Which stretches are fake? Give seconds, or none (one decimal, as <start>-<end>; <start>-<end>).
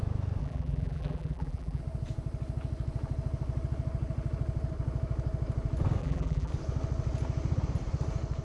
0.4-1.8; 6.0-6.5